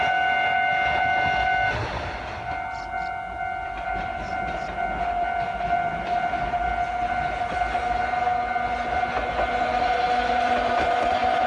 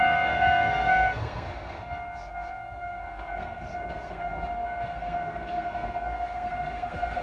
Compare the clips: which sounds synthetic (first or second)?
second